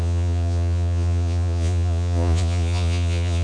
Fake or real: fake